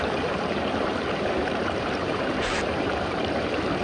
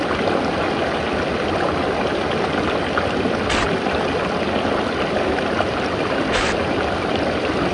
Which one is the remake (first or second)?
first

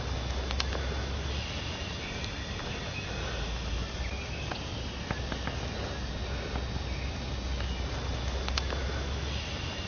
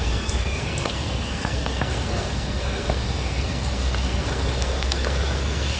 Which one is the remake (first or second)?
second